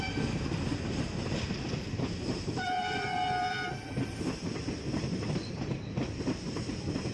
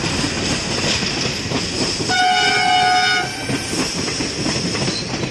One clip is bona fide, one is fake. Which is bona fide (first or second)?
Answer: second